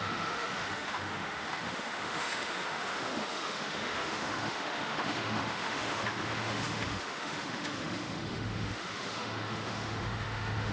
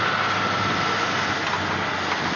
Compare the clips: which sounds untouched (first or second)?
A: second